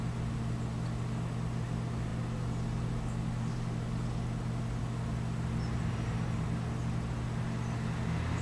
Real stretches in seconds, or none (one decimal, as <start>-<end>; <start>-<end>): 0.0-8.4